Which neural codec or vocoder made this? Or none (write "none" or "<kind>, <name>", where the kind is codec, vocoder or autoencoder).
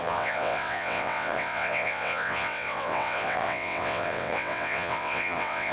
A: vocoder, WaveNeXt